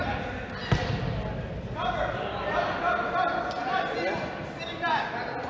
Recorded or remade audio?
recorded